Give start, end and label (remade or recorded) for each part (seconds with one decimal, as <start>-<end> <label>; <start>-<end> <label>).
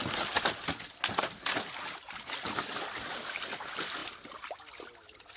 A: 0.0-5.4 recorded